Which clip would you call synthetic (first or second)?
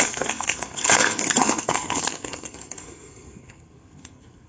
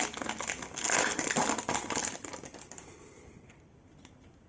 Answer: first